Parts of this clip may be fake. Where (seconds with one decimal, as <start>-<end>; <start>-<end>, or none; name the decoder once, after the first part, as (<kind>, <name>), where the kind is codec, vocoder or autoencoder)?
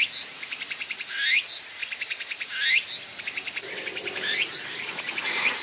none